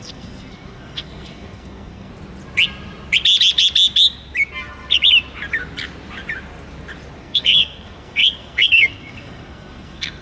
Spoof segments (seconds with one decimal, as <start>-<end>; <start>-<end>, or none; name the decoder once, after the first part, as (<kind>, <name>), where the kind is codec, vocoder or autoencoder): 0.0-2.1 (codec, SNAC); 7.2-10.2